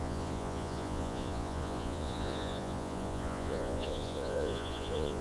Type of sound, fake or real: fake